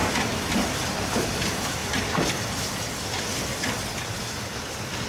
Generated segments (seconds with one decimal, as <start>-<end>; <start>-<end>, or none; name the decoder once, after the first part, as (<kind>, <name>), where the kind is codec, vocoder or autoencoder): none